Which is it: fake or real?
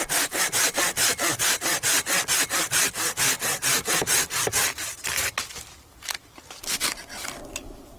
real